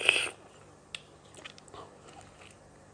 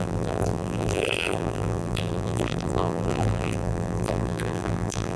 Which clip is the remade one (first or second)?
second